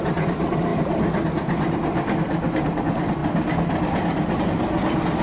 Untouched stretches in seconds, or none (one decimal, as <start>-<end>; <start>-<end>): 0.0-5.2